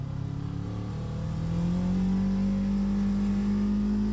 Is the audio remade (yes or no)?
no